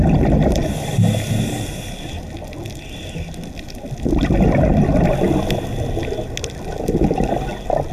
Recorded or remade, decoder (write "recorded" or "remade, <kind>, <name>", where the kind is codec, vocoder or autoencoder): recorded